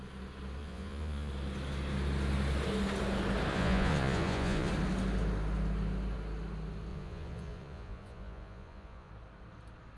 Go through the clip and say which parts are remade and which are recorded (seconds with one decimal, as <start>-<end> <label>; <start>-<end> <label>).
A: 0.0-0.6 recorded; 0.6-1.3 remade; 1.3-3.5 recorded; 3.5-4.7 remade; 4.7-6.9 recorded; 6.9-9.1 remade; 9.1-10.0 recorded